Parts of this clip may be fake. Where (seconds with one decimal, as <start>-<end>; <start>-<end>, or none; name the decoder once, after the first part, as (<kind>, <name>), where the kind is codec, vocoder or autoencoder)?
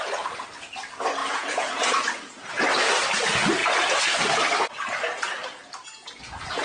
1.2-2.4 (vocoder, Vocos)